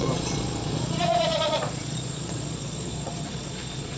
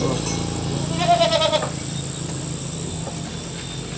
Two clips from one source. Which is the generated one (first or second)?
first